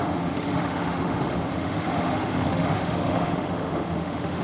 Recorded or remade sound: remade